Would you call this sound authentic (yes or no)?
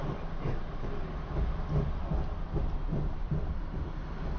yes